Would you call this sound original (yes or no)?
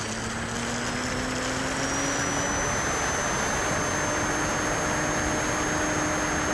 yes